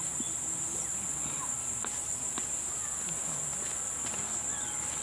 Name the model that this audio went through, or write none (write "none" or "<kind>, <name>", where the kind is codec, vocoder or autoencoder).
none